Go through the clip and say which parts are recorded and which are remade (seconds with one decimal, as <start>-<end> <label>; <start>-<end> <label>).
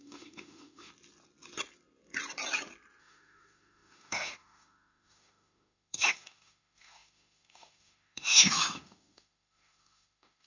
0.0-0.9 remade; 0.9-3.0 recorded; 3.0-10.5 remade